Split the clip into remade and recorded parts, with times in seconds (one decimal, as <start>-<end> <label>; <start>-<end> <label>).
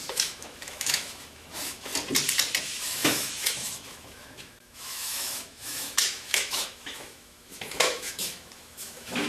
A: 0.0-1.9 remade; 1.9-2.6 recorded; 2.6-9.3 remade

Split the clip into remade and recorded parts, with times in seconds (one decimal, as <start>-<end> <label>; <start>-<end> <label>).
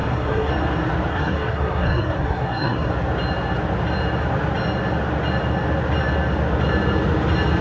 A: 0.0-0.5 remade; 0.5-1.1 recorded; 1.1-2.9 remade; 2.9-7.6 recorded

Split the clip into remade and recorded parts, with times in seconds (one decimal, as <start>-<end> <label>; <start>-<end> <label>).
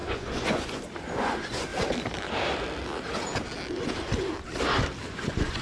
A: 0.0-1.7 remade; 1.7-5.1 recorded; 5.1-5.6 remade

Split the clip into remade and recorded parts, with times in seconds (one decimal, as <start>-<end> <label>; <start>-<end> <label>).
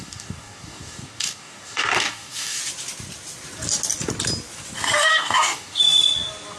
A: 0.0-2.6 remade; 2.6-5.1 recorded; 5.1-5.8 remade; 5.8-6.6 recorded